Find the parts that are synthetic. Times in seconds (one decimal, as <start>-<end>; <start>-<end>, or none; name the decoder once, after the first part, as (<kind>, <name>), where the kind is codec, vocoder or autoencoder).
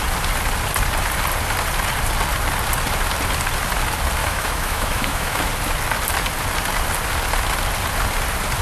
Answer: 4.2-5.5 (autoencoder, DAC-VAE)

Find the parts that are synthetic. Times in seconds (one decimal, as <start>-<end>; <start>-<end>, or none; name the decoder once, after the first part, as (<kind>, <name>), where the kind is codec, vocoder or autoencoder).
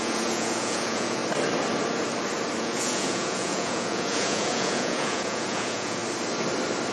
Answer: 0.0-1.2 (vocoder, Vocos); 2.6-6.0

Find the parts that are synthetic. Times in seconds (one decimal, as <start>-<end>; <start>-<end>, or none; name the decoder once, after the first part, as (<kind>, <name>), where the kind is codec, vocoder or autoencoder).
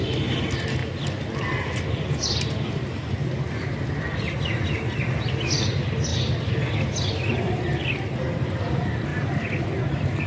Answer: none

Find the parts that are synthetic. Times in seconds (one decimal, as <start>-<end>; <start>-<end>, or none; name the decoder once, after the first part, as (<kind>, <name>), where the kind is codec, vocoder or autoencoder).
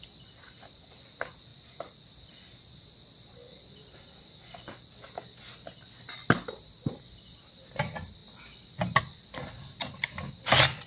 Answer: 1.5-2.0 (vocoder, BigVGAN v2)